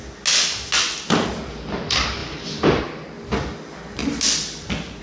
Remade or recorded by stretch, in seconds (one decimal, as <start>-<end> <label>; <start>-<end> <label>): 0.0-2.2 recorded; 2.2-2.8 remade; 2.8-5.0 recorded